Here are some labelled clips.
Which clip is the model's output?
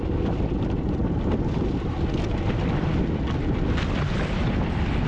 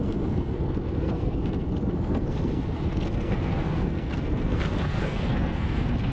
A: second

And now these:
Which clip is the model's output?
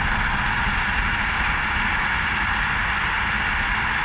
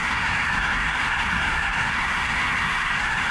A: second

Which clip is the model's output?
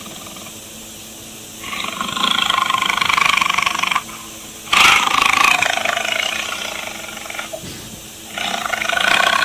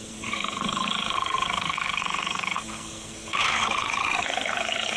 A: second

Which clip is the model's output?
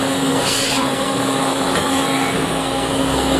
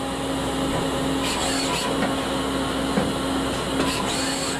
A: first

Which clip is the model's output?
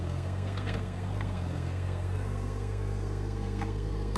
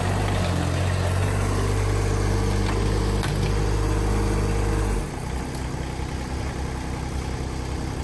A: first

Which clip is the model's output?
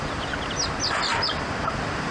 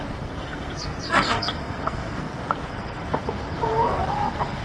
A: second